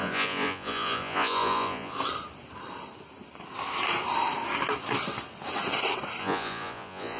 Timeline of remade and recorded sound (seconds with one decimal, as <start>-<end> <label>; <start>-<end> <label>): 0.0-1.9 remade; 1.9-6.2 recorded; 6.2-7.2 remade